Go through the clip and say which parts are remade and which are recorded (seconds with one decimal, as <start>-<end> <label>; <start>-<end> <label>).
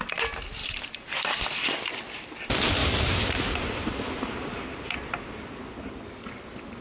0.0-0.6 recorded; 0.6-1.7 remade; 1.7-2.8 recorded; 2.8-5.5 remade; 5.5-6.8 recorded